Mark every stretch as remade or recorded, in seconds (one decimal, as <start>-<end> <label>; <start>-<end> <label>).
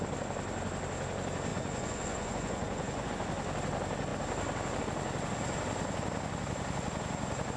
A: 0.0-1.5 recorded; 1.5-3.1 remade; 3.1-7.6 recorded